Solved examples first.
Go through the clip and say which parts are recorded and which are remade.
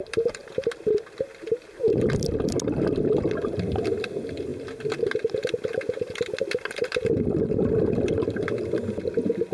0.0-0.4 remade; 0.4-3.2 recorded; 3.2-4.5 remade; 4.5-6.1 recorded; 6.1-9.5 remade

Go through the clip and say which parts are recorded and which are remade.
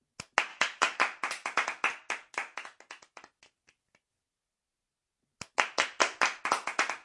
0.0-0.5 recorded; 0.5-1.0 remade; 1.0-7.0 recorded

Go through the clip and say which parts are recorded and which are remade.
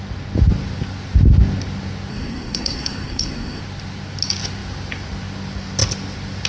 0.0-2.1 recorded; 2.1-3.6 remade; 3.6-6.5 recorded